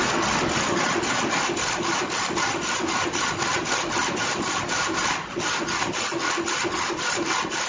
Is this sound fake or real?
real